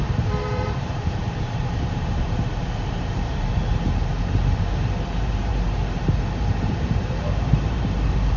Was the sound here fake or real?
fake